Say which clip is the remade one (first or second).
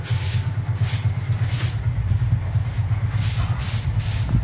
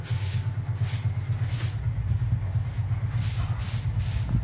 first